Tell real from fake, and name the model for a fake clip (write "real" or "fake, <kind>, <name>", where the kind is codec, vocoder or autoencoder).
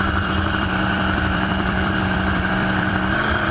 fake, vocoder, BigVGAN v2